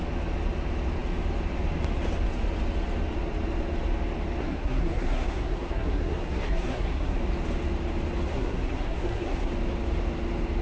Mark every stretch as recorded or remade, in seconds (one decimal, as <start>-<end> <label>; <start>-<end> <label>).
0.0-4.4 recorded; 4.4-7.2 remade; 7.2-8.3 recorded; 8.3-9.5 remade; 9.5-10.6 recorded

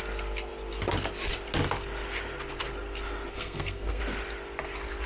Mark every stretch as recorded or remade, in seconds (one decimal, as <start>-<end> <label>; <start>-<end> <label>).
0.0-3.3 recorded; 3.3-4.0 remade; 4.0-5.1 recorded